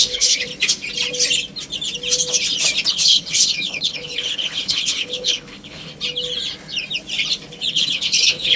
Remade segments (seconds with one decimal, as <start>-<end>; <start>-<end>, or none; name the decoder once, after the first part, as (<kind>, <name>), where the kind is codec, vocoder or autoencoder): 0.0-0.5 (codec, HILCodec); 2.9-5.9; 7.7-8.6